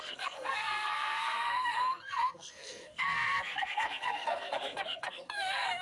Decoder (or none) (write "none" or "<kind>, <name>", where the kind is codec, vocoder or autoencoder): codec, SNAC